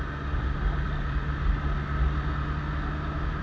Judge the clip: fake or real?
real